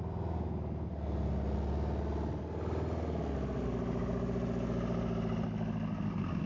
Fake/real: real